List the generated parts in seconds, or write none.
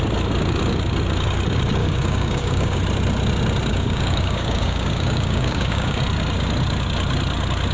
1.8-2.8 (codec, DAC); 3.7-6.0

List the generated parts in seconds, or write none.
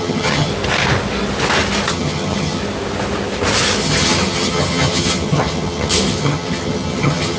0.0-0.5 (vocoder, HiFi-GAN); 1.9-2.6; 3.8-7.4